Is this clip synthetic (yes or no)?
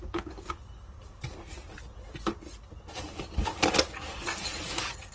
no